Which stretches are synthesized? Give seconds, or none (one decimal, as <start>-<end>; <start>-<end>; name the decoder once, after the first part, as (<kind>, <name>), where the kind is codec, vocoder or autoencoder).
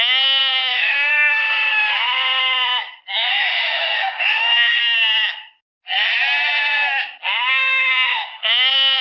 0.0-1.9 (autoencoder, DAC-VAE); 3.3-4.8; 7.5-9.0